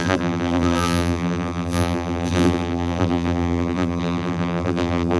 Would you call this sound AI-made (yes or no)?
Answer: yes